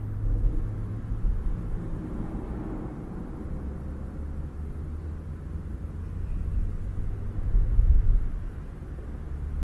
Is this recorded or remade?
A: recorded